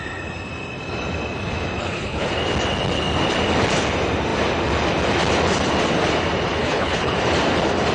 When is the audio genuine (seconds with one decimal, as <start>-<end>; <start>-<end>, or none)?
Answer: 0.0-1.8; 2.3-6.6; 7.1-7.9